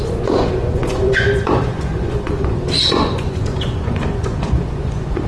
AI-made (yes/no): yes